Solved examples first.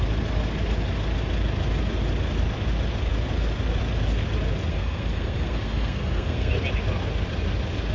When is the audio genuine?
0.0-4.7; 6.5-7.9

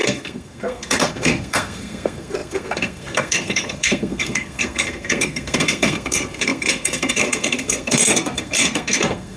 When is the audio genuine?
none